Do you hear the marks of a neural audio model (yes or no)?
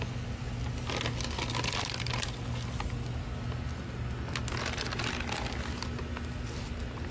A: no